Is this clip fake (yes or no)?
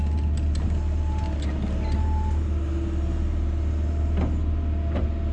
no